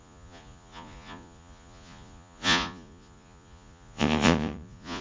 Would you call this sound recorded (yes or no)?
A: no